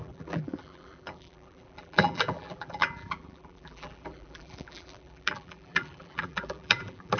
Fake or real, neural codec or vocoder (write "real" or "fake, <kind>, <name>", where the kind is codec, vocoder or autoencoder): fake, vocoder, BigVGAN v2